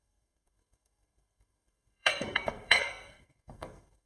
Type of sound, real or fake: fake